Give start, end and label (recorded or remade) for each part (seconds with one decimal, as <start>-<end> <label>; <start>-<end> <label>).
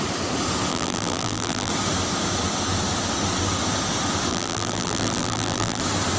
0.0-0.7 recorded; 0.7-1.7 remade; 1.7-4.3 recorded; 4.3-5.8 remade; 5.8-6.2 recorded